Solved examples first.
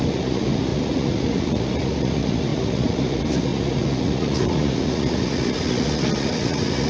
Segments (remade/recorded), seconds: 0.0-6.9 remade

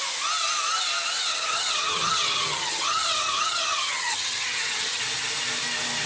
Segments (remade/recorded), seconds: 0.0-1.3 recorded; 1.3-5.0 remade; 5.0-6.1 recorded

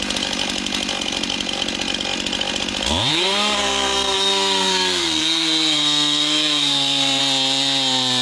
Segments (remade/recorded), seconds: 0.0-3.1 recorded; 3.1-7.2 remade; 7.2-8.2 recorded

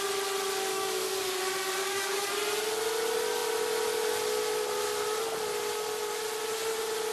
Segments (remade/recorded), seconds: 0.0-0.7 recorded; 0.7-1.4 remade; 1.4-1.8 recorded; 1.8-2.3 remade; 2.3-7.1 recorded

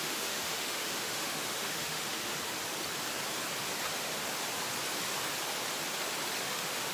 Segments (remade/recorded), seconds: 0.0-2.3 remade; 2.3-6.4 recorded; 6.4-6.9 remade

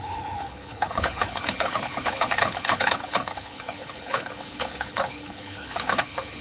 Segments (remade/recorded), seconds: 0.0-6.4 remade

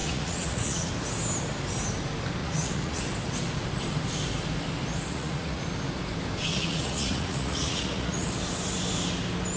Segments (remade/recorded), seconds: 0.0-0.9 remade; 0.9-2.4 recorded; 2.4-3.0 remade; 3.0-5.1 recorded; 5.1-5.6 remade; 5.6-6.5 recorded; 6.5-8.3 remade; 8.3-9.6 recorded

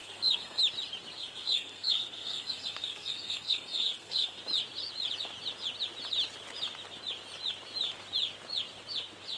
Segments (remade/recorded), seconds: 0.0-0.6 remade; 0.6-1.2 recorded; 1.2-4.4 remade; 4.4-9.4 recorded